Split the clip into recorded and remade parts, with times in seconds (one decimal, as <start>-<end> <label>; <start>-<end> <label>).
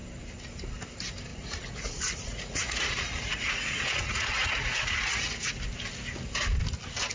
0.0-1.3 recorded; 1.3-5.6 remade; 5.6-7.1 recorded